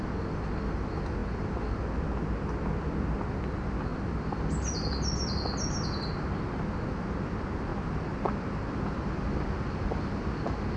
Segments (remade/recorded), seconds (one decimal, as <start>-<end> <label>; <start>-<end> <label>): 0.0-10.8 recorded